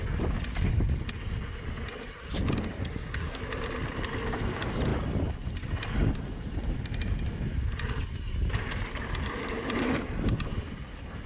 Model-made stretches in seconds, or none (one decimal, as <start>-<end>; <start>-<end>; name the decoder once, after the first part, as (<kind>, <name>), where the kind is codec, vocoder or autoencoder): 2.8-3.4 (codec, SNAC)